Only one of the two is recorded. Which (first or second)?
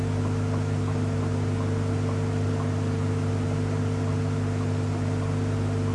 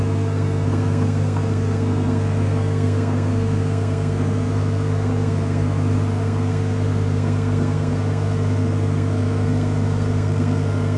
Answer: first